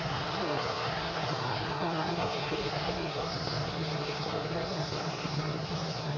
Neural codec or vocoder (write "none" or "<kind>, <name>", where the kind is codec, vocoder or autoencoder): codec, SNAC